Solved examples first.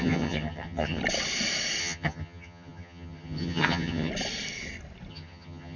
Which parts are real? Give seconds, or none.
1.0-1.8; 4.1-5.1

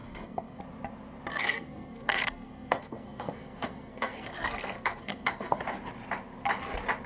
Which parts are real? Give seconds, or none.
0.6-1.3; 5.6-7.1

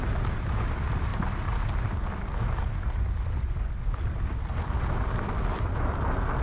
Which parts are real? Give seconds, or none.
0.0-6.4

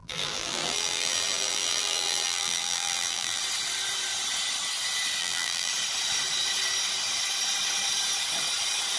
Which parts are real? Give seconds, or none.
3.4-5.2; 5.7-9.0

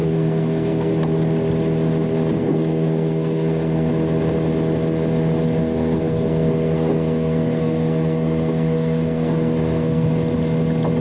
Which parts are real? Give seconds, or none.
0.9-2.4; 3.9-5.6; 10.1-11.0

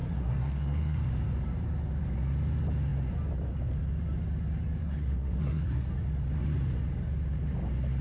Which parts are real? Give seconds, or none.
1.0-4.8; 5.9-8.0

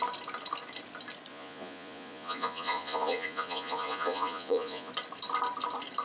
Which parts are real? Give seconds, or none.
0.0-1.3; 4.9-6.0

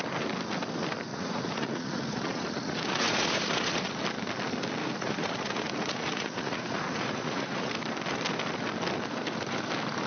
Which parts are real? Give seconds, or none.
0.0-1.1; 4.0-4.8; 7.7-10.1